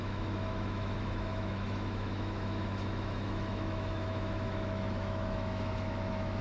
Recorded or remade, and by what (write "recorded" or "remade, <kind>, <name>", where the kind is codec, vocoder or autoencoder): remade, autoencoder, DAC-VAE